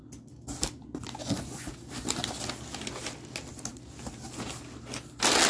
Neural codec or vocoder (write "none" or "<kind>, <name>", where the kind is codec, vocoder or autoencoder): none